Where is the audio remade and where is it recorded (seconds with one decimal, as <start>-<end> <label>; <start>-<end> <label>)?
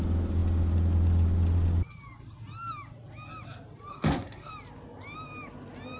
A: 0.0-3.9 recorded; 3.9-4.5 remade; 4.5-6.0 recorded